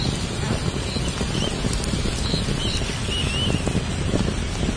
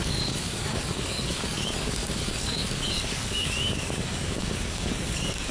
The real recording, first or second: first